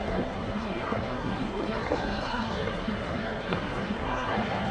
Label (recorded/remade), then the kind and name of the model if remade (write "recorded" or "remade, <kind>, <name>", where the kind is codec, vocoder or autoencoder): remade, codec, SNAC